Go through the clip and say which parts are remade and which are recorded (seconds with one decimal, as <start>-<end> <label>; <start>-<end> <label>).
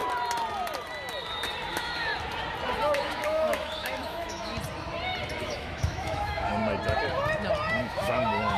0.0-1.7 recorded; 1.7-2.1 remade; 2.1-2.8 recorded; 2.8-4.5 remade; 4.5-5.4 recorded; 5.4-6.6 remade; 6.6-7.7 recorded; 7.7-8.6 remade